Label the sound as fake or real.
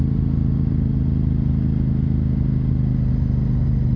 real